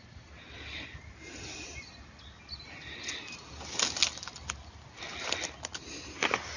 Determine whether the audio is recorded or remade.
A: recorded